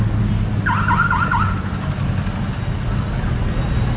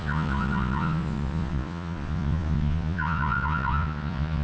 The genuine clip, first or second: first